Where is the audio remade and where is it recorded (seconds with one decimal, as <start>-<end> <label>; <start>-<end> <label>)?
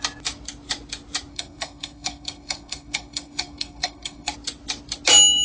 0.0-1.3 recorded; 1.3-4.3 remade; 4.3-5.4 recorded